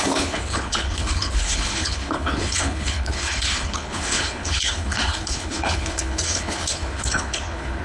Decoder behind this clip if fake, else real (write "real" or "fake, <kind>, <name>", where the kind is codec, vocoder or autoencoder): fake, codec, HILCodec